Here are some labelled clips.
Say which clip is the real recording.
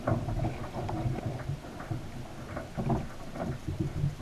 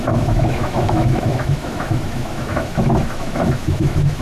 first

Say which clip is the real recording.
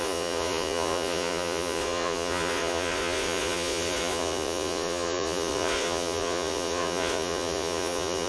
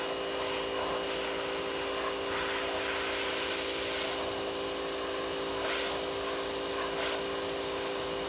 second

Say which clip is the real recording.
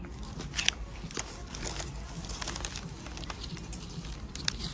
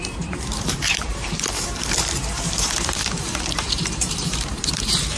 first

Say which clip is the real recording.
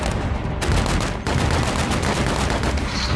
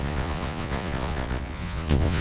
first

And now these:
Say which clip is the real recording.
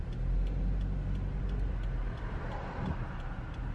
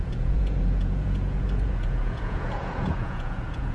first